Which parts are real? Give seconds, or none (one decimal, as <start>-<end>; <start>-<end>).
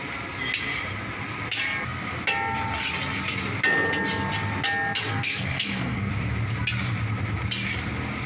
0.0-5.0; 6.1-8.3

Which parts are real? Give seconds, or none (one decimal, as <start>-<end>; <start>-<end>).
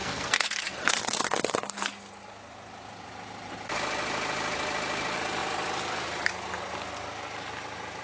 1.0-8.0